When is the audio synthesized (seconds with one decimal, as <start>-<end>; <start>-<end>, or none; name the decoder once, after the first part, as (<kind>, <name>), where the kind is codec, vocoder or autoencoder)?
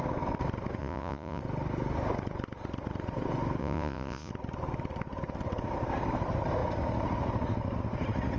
0.8-1.4 (vocoder, Vocos); 3.6-4.3